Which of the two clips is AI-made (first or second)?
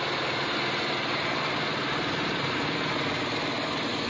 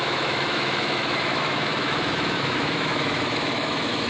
second